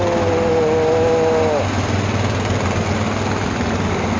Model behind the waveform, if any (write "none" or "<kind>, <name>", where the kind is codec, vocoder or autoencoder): none